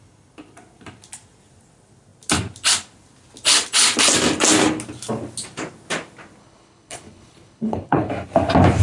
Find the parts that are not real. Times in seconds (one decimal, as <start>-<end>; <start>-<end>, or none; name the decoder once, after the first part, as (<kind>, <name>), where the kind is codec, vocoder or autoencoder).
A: 6.4-8.1 (codec, HILCodec)